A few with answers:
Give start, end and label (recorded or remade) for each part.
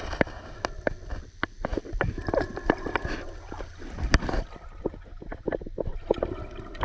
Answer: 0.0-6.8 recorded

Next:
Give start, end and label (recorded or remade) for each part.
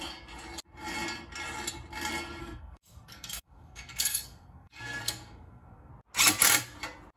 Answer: 0.0-2.4 recorded; 2.4-5.9 remade; 5.9-7.2 recorded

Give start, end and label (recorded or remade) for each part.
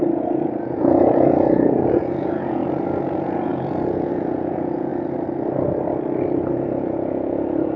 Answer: 0.0-2.6 remade; 2.6-3.1 recorded; 3.1-4.9 remade; 4.9-6.5 recorded; 6.5-7.8 remade